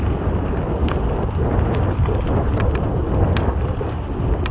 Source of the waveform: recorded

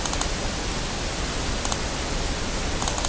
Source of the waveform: recorded